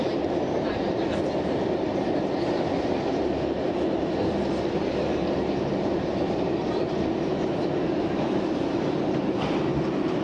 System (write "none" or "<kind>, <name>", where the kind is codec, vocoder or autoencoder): none